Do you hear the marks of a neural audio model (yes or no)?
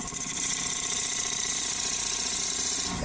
no